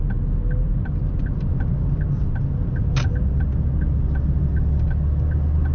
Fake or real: real